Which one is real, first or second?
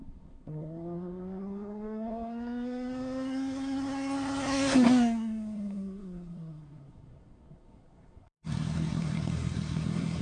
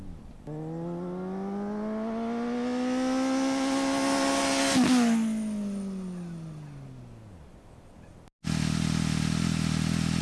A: second